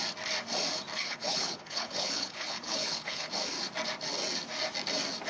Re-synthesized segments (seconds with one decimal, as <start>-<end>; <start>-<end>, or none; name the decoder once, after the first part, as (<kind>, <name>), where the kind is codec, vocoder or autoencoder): 0.9-3.3 (codec, HILCodec)